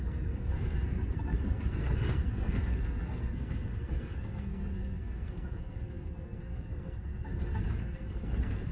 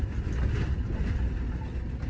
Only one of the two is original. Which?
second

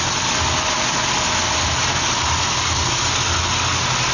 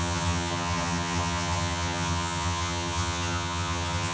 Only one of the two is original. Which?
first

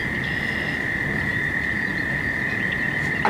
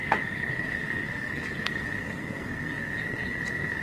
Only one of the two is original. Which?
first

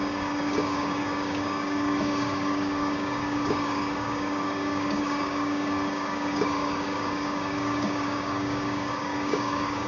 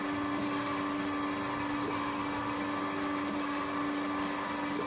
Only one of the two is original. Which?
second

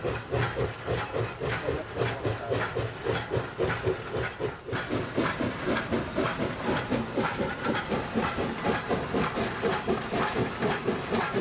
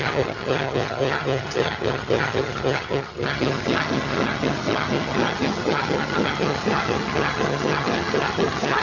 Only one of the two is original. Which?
first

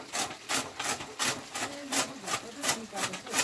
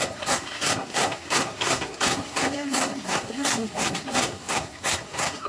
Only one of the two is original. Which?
first